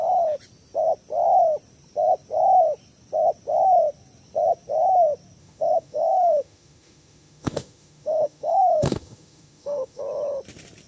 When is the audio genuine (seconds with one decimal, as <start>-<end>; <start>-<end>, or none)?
0.0-5.4; 10.0-10.9